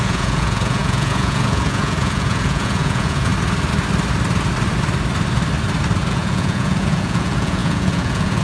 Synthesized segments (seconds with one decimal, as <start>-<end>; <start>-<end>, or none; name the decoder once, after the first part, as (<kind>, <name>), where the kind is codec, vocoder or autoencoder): 0.0-3.3 (vocoder, Vocos); 6.1-8.4